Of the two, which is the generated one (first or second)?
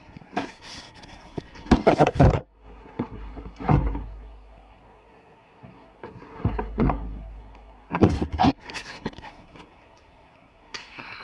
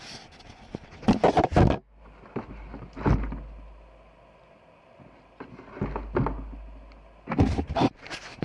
first